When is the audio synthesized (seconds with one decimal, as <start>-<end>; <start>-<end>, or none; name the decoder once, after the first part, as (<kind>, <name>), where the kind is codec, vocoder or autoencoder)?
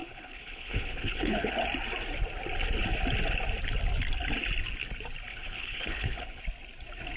0.0-1.5 (codec, HILCodec); 5.3-6.4